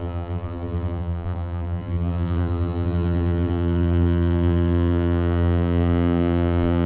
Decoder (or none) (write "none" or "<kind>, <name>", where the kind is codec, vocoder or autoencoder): vocoder, BigVGAN v2